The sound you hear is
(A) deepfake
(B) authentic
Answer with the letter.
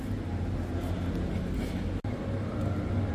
B